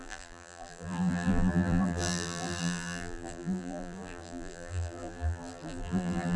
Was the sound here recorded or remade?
remade